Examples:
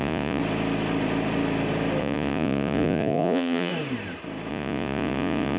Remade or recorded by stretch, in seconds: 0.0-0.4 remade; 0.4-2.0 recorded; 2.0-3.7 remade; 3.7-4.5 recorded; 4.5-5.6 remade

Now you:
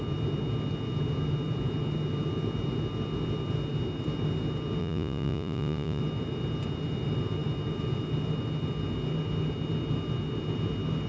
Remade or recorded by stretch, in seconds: 0.0-4.8 recorded; 4.8-6.0 remade; 6.0-11.1 recorded

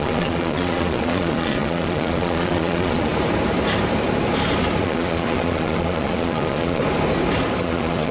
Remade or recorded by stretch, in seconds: 0.0-3.1 remade; 3.1-4.8 recorded; 4.8-6.8 remade; 6.8-7.6 recorded; 7.6-8.1 remade

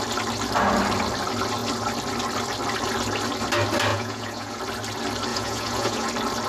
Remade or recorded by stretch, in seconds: 0.0-3.9 recorded; 3.9-4.6 remade; 4.6-5.3 recorded; 5.3-6.1 remade; 6.1-6.5 recorded

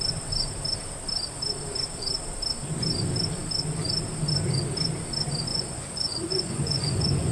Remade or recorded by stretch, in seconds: 0.0-5.5 recorded; 5.5-7.3 remade

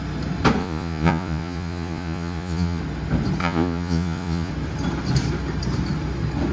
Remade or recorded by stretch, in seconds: 0.0-0.6 recorded; 0.6-2.8 remade; 2.8-3.4 recorded; 3.4-4.5 remade; 4.5-6.5 recorded

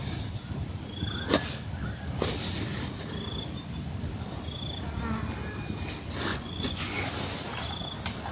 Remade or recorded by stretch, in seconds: 0.0-6.3 recorded; 6.3-7.1 remade; 7.1-8.3 recorded

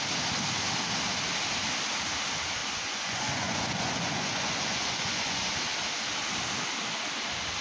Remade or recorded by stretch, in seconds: 0.0-2.6 recorded; 2.6-5.5 remade; 5.5-7.6 recorded